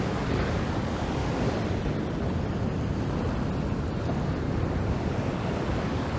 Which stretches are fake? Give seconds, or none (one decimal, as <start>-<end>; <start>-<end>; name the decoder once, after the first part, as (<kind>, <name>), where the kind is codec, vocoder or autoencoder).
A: 0.0-1.2 (codec, DAC); 4.9-6.2